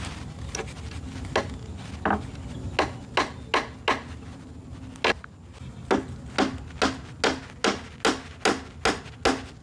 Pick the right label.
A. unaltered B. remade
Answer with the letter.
A